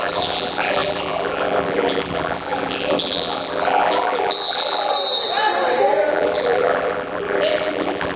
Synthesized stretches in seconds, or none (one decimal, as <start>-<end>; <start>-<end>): 0.0-4.9; 6.1-8.2